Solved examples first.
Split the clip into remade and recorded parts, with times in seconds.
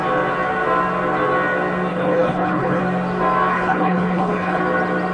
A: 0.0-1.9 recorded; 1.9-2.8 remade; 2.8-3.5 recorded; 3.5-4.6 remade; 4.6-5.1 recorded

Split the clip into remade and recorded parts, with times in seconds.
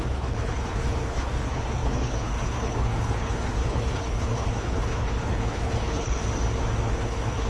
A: 0.0-6.2 remade; 6.2-7.0 recorded; 7.0-7.5 remade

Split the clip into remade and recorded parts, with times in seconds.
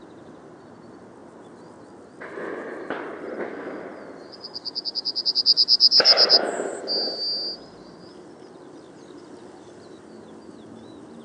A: 0.0-11.2 recorded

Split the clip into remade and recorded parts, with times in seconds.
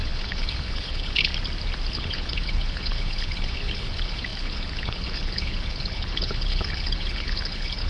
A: 0.0-1.3 remade; 1.3-1.9 recorded; 1.9-7.9 remade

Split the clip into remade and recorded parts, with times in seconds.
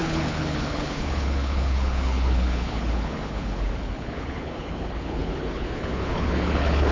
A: 0.0-6.9 remade